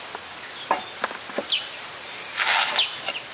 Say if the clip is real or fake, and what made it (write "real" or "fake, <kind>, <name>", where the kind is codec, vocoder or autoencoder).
real